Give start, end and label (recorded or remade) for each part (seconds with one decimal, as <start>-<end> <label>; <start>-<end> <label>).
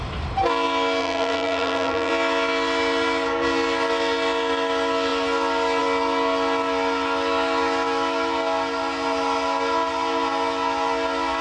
0.0-1.0 recorded; 1.0-2.1 remade; 2.1-11.4 recorded